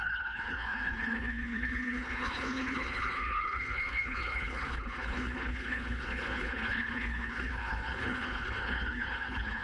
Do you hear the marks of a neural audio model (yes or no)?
yes